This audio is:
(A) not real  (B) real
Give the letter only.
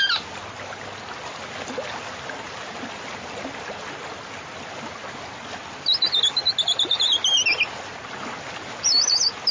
B